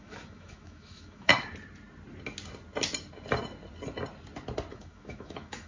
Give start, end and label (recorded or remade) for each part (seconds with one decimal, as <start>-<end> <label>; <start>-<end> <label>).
0.0-1.3 remade; 1.3-4.7 recorded; 4.7-5.7 remade